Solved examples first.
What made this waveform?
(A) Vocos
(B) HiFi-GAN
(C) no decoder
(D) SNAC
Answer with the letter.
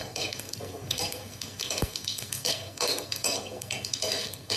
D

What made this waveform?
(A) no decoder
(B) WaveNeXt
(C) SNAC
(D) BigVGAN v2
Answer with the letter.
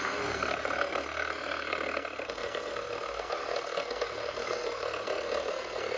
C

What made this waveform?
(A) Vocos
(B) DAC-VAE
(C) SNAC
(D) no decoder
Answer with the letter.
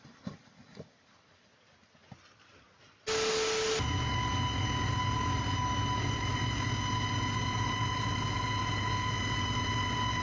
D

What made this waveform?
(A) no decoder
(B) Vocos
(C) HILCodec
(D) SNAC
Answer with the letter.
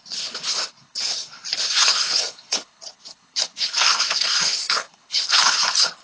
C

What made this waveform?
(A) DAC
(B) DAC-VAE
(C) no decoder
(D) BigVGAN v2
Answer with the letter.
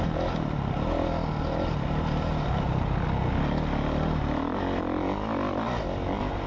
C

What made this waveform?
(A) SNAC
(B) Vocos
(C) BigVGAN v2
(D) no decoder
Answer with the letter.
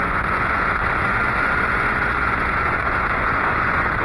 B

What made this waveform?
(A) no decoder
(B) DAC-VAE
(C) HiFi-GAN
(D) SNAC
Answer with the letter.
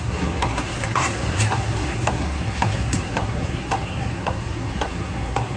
D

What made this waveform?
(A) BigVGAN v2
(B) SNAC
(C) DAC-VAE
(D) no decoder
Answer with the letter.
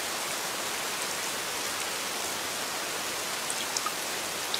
D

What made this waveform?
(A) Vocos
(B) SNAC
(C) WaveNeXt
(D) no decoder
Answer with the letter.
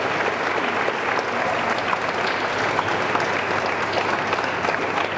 D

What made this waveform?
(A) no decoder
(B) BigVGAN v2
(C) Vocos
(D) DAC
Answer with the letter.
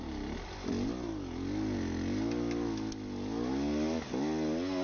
A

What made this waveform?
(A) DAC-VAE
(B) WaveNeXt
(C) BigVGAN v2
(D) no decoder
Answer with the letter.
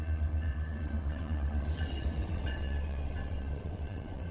B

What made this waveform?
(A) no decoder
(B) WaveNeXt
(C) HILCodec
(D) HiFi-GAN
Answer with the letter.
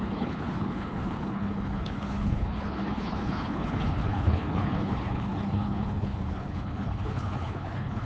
C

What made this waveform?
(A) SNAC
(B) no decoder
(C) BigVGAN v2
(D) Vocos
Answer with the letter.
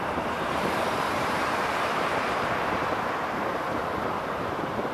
C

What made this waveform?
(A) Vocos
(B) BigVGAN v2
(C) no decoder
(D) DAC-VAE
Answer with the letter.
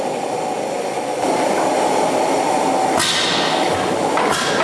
C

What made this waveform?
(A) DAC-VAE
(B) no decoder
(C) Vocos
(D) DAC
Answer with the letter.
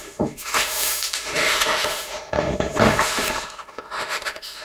A